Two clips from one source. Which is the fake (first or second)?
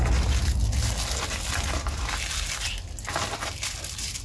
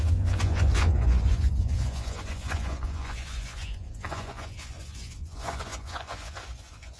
second